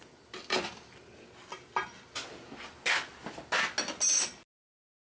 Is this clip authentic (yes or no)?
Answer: yes